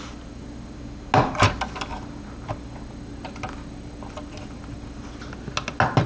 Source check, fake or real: real